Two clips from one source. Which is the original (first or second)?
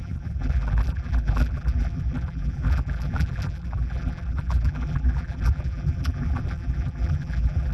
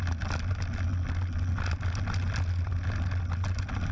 second